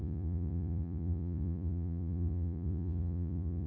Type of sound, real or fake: fake